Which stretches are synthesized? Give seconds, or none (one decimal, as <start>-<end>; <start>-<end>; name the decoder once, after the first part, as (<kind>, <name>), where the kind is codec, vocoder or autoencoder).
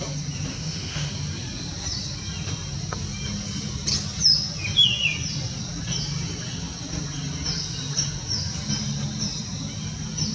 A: 0.5-1.1 (autoencoder, DAC-VAE)